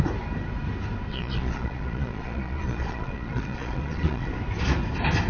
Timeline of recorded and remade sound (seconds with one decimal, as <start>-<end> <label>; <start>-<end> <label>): 0.0-1.1 recorded; 1.1-4.3 remade; 4.3-5.3 recorded